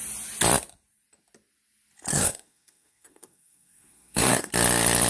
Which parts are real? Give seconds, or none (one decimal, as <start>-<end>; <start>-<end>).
0.0-2.1; 4.5-5.1